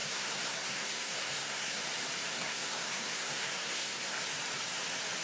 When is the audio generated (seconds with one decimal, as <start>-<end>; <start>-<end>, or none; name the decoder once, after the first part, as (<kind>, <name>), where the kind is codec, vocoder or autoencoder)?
0.0-1.8 (codec, SNAC); 2.3-4.2